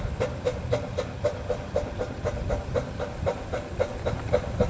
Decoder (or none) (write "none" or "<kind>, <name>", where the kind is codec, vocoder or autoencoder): none